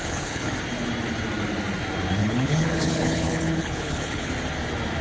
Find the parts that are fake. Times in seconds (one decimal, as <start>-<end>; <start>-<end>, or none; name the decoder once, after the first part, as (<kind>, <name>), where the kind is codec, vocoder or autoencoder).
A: 0.0-0.5 (codec, HILCodec); 2.2-4.3